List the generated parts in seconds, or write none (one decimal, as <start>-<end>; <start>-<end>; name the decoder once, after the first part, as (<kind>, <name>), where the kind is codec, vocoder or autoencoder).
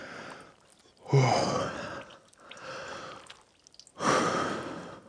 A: none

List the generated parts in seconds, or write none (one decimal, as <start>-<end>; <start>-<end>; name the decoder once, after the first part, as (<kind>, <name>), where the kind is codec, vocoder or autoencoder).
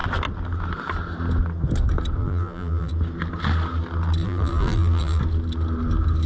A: 2.2-2.9 (vocoder, BigVGAN v2); 4.2-5.2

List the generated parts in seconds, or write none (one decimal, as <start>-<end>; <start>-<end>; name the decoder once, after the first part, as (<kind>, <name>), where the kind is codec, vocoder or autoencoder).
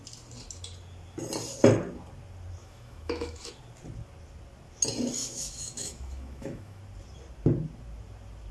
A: 2.6-3.5 (autoencoder, DAC-VAE); 5.2-6.8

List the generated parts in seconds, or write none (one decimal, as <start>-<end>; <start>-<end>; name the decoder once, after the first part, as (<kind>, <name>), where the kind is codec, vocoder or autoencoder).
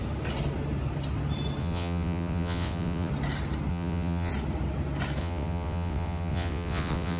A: 1.6-3.1 (vocoder, WaveNeXt); 3.7-4.3; 5.2-7.2